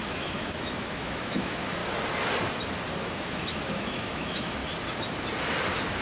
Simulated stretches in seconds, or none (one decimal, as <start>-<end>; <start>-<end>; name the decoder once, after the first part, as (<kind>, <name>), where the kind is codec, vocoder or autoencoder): 0.0-1.8 (autoencoder, DAC-VAE); 3.0-4.6